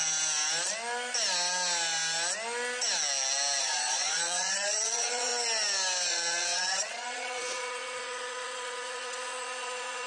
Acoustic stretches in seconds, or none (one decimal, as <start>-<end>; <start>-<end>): 0.0-3.6; 5.3-6.1